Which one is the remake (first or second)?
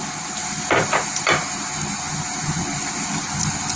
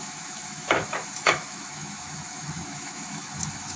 second